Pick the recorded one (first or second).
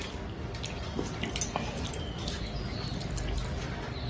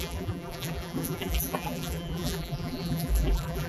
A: first